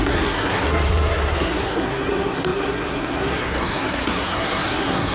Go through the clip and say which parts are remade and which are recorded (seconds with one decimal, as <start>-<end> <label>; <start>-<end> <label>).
0.0-5.1 remade